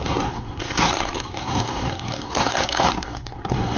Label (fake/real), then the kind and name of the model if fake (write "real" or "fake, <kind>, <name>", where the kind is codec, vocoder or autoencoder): fake, codec, SNAC